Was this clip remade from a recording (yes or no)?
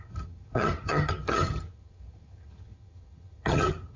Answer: yes